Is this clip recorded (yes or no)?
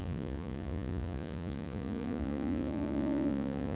no